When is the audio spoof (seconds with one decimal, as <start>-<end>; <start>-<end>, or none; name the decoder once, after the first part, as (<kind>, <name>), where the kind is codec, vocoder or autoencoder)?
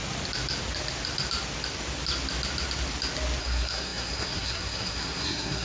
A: 3.4-5.6 (codec, SNAC)